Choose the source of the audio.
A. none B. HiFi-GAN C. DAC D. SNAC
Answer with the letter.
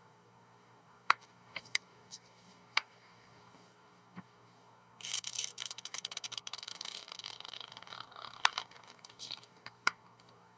C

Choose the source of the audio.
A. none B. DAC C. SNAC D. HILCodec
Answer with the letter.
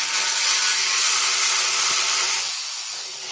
A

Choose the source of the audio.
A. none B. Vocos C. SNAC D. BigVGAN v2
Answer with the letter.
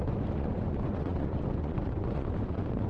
B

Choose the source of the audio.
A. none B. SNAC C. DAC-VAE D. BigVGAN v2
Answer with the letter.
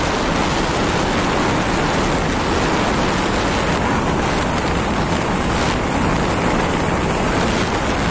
A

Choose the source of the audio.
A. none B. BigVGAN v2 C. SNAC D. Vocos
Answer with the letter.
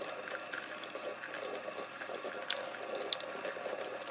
A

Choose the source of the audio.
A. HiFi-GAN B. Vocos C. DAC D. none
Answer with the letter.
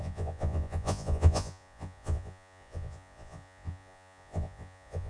B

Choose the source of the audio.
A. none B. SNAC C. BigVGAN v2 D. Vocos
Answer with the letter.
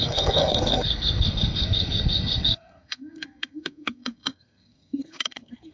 B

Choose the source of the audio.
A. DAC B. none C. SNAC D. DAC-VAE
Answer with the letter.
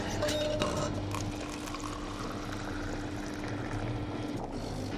B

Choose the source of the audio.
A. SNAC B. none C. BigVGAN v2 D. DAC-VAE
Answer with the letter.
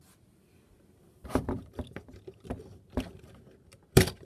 B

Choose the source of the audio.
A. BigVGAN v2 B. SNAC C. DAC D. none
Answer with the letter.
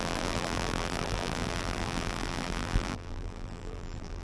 A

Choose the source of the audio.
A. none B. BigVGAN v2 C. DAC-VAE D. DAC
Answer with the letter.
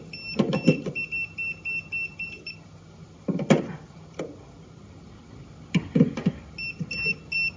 A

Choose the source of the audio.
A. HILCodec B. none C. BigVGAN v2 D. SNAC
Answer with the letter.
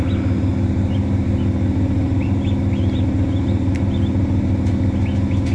B